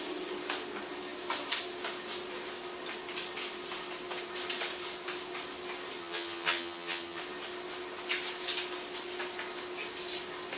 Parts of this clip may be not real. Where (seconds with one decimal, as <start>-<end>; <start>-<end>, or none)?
6.0-7.2